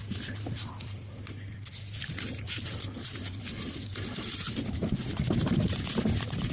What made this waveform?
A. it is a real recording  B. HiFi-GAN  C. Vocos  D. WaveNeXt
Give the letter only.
A